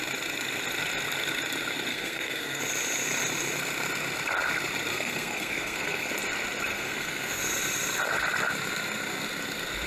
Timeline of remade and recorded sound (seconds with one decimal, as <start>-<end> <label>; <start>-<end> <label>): 0.0-1.9 recorded; 1.9-2.6 remade; 2.6-4.9 recorded; 4.9-6.1 remade; 6.1-6.7 recorded; 6.7-7.4 remade; 7.4-9.9 recorded